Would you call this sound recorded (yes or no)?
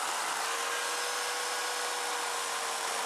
yes